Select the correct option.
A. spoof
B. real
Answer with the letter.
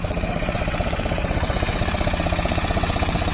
A